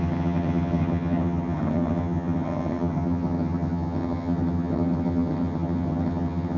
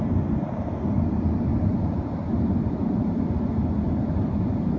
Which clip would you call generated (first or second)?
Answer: first